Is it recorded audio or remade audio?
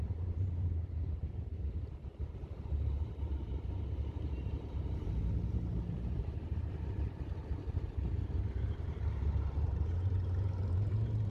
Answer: remade